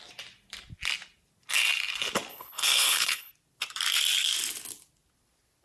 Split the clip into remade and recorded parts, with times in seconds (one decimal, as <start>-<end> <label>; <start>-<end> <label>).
0.0-2.3 recorded; 2.3-3.3 remade; 3.3-5.6 recorded